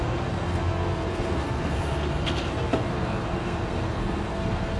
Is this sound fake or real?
fake